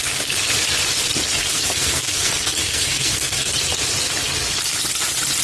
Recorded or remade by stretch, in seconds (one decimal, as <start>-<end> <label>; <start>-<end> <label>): 0.0-1.5 recorded; 1.5-3.5 remade; 3.5-5.4 recorded

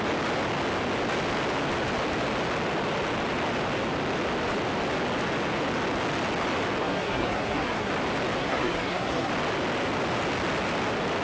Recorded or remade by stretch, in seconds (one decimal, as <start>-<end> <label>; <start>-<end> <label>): 0.0-6.8 recorded; 6.8-7.9 remade; 7.9-8.4 recorded; 8.4-9.3 remade; 9.3-11.2 recorded